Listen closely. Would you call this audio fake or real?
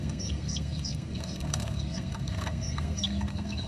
fake